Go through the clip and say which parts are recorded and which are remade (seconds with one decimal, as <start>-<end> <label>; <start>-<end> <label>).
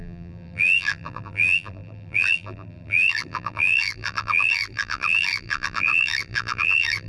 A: 0.0-7.1 remade